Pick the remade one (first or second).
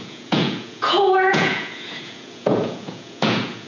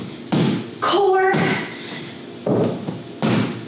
first